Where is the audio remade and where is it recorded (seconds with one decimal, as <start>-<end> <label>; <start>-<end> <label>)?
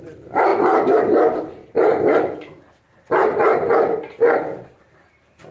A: 0.0-1.6 remade; 1.6-4.8 recorded; 4.8-5.5 remade